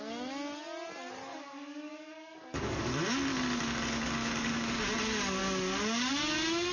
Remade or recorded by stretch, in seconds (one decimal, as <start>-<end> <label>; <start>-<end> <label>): 0.0-1.3 recorded; 1.3-2.9 remade; 2.9-3.3 recorded; 3.3-4.8 remade; 4.8-5.4 recorded; 5.4-6.1 remade; 6.1-6.7 recorded